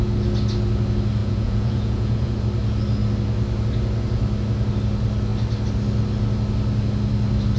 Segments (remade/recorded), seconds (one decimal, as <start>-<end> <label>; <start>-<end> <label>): 0.0-1.2 recorded; 1.2-2.4 remade; 2.4-7.6 recorded